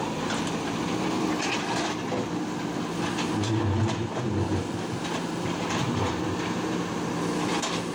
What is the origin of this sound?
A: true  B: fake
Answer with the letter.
A